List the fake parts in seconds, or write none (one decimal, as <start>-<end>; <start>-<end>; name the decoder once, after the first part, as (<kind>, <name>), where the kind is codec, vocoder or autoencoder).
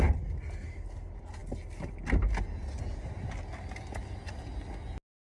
none